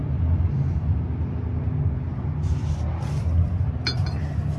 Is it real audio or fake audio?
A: real